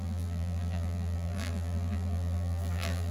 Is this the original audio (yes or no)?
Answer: no